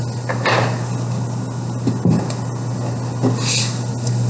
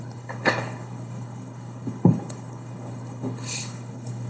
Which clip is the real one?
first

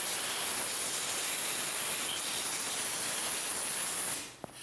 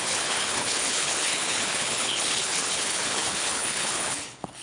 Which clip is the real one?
first